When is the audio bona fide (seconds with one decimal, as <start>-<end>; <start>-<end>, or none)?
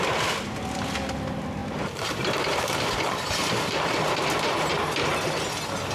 0.0-1.6; 4.7-5.9